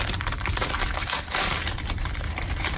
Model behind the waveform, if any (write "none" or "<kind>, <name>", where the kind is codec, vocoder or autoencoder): vocoder, BigVGAN v2